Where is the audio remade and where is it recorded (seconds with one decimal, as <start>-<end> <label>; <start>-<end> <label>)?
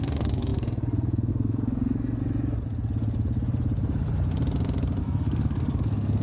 0.0-2.2 remade; 2.2-5.0 recorded; 5.0-6.2 remade